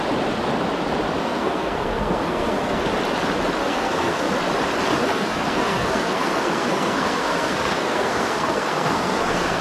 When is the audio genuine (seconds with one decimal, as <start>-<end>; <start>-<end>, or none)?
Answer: 0.0-1.2; 2.8-3.6; 4.3-5.0